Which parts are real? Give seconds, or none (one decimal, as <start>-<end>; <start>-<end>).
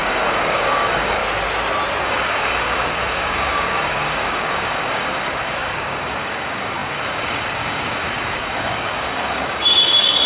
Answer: 1.2-2.0